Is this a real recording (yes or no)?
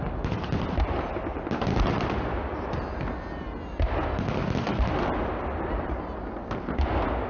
yes